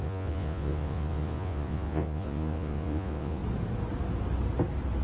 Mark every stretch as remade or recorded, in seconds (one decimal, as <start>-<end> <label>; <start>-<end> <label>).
0.0-3.4 remade; 3.4-5.0 recorded